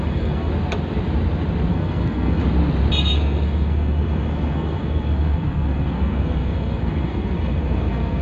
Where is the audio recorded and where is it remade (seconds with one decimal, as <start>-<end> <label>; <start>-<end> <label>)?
0.0-0.5 remade; 0.5-1.7 recorded; 1.7-2.4 remade; 2.4-3.0 recorded; 3.0-8.2 remade